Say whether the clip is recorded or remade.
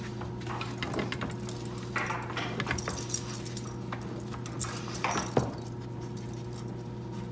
recorded